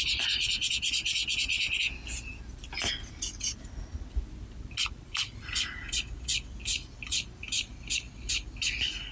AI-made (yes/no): no